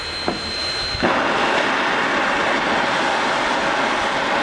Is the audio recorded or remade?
recorded